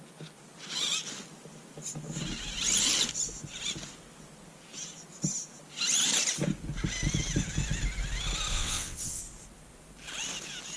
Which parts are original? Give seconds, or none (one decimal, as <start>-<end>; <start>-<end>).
0.0-8.5; 9.2-10.8